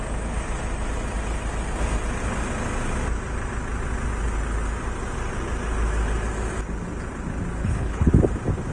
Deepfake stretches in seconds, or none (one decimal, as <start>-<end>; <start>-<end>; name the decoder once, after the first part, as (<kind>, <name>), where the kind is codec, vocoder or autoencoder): 7.6-8.1 (codec, HILCodec)

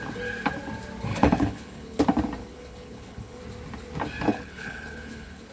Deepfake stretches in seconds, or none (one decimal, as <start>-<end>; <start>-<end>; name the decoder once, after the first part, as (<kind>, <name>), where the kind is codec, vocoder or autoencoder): 1.1-2.0 (codec, HILCodec); 2.4-3.4; 4.3-5.5

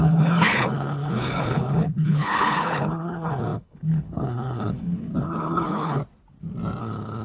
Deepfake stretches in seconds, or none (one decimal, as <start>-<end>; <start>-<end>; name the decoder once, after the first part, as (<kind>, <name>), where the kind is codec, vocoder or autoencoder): 0.0-6.0 (codec, HILCodec); 6.8-7.2

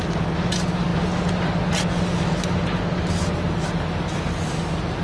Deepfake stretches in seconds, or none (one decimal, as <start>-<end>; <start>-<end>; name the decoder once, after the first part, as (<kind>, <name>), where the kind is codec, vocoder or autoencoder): none